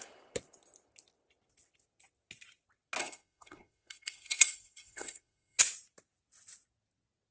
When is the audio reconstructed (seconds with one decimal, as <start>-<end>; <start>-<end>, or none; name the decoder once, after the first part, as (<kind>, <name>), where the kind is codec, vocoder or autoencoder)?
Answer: 3.0-5.6 (codec, SNAC)